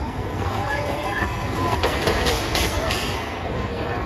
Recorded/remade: remade